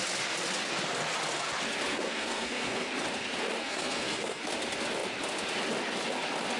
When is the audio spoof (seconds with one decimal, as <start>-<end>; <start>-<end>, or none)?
1.9-2.9; 3.6-4.4